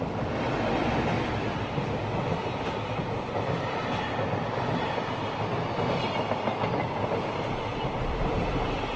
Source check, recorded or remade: recorded